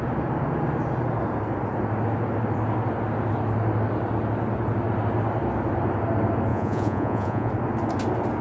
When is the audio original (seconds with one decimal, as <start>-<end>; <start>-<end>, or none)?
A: 0.0-6.5; 7.5-8.4